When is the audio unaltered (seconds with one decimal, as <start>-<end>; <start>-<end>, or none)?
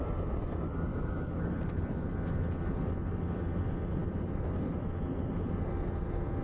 0.0-0.9; 1.5-6.4